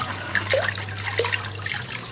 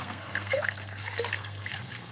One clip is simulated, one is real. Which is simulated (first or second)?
second